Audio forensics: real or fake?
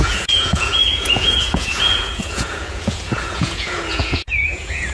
fake